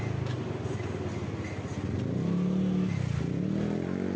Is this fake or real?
real